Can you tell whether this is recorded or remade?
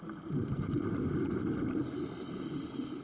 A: recorded